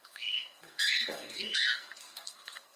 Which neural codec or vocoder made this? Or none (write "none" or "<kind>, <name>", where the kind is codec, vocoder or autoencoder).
codec, SNAC